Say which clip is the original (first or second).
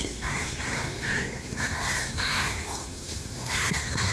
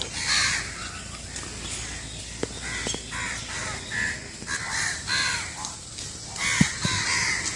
second